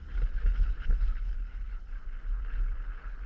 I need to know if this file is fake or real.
fake